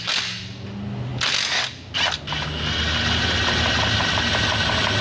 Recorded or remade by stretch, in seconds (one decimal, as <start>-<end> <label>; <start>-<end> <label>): 0.0-5.0 recorded